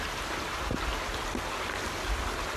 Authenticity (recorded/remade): recorded